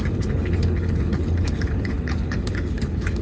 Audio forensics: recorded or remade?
remade